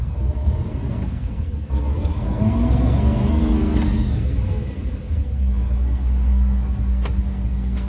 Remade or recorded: remade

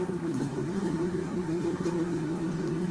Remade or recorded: remade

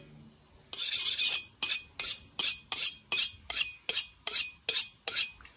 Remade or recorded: recorded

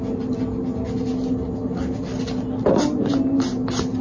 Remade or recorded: recorded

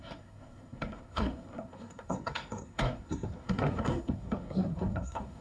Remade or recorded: remade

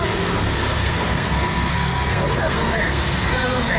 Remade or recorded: remade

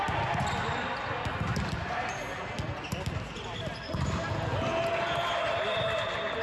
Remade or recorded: recorded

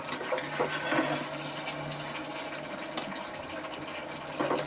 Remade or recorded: recorded